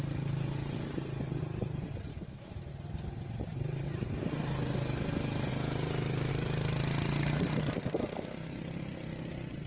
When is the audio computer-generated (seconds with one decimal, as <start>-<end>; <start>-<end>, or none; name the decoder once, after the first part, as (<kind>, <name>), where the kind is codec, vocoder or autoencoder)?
2.1-2.7 (autoencoder, DAC-VAE)